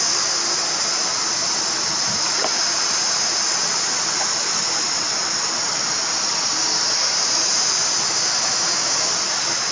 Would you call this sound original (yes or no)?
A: yes